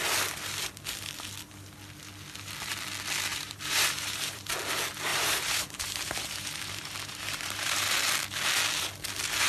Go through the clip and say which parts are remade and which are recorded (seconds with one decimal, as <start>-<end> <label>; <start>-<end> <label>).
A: 0.0-3.3 recorded; 3.3-4.5 remade; 4.5-5.1 recorded; 5.1-8.1 remade; 8.1-9.5 recorded